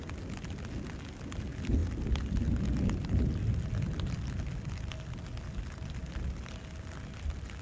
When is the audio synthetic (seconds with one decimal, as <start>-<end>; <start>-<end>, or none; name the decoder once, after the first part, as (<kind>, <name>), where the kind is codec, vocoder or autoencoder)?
none